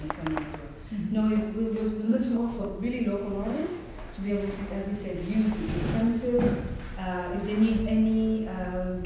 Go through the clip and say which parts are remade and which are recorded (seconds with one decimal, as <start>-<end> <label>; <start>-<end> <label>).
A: 0.0-2.0 recorded; 2.0-2.6 remade; 2.6-3.5 recorded; 3.5-4.3 remade; 4.3-9.1 recorded

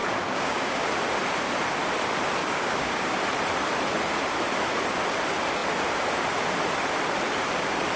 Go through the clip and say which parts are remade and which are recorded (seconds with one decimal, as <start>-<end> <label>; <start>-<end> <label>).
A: 0.0-0.9 remade; 0.9-2.4 recorded; 2.4-3.2 remade; 3.2-8.0 recorded

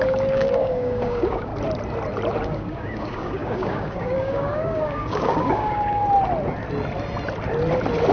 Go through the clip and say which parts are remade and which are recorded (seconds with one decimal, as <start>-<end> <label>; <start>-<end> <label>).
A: 0.0-1.5 remade; 1.5-2.4 recorded; 2.4-6.0 remade; 6.0-8.1 recorded

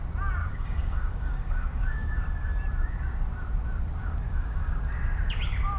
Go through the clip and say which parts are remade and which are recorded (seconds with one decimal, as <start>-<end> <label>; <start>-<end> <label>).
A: 0.0-0.4 recorded; 0.4-2.5 remade; 2.5-4.0 recorded; 4.0-4.8 remade; 4.8-5.8 recorded

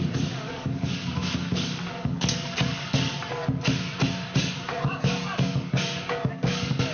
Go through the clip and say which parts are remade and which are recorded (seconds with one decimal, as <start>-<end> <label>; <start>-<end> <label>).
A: 0.0-3.2 remade; 3.2-4.8 recorded; 4.8-6.9 remade

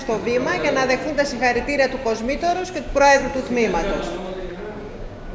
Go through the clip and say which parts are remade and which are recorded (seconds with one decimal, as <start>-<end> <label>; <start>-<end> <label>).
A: 0.0-2.5 recorded; 2.5-3.2 remade; 3.2-4.6 recorded; 4.6-5.3 remade

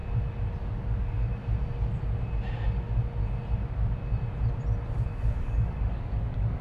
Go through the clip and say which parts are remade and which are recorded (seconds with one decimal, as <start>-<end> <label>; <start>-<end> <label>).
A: 0.0-0.6 recorded; 0.6-1.4 remade; 1.4-5.0 recorded; 5.0-6.6 remade

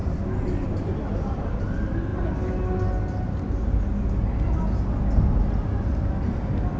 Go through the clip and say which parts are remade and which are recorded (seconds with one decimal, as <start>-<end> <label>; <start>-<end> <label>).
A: 0.0-6.8 recorded